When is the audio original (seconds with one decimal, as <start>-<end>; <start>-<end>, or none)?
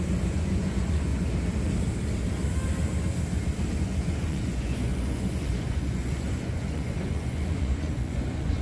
1.1-3.8